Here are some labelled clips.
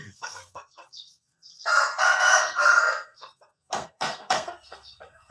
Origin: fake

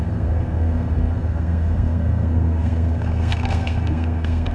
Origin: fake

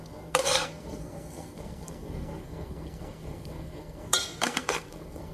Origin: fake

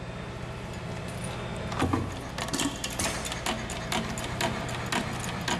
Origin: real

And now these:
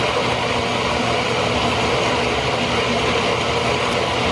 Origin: real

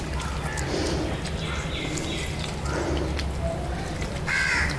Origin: real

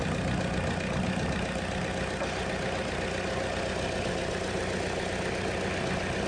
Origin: real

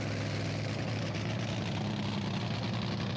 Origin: real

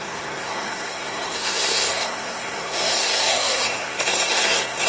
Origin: fake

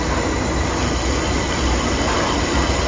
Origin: real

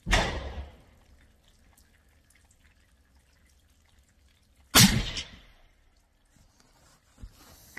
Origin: real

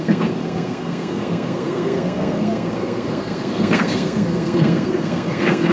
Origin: fake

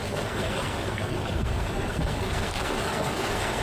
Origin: fake